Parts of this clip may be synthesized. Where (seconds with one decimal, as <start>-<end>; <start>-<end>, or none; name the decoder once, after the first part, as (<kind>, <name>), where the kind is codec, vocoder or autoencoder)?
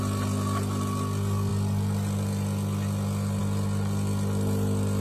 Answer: none